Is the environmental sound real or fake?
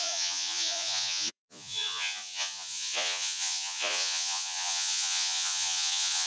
fake